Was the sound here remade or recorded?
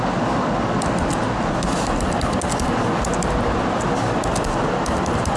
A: recorded